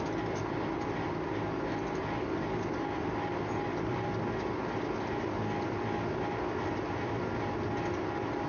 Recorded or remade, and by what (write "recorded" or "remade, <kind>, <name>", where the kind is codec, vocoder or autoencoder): recorded